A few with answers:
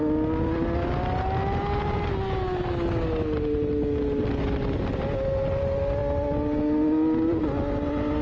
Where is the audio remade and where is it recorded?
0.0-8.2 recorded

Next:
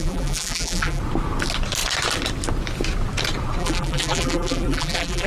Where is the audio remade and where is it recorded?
0.0-1.0 remade; 1.0-3.6 recorded; 3.6-5.3 remade

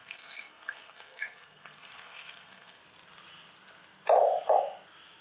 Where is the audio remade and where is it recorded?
0.0-2.8 remade; 2.8-5.2 recorded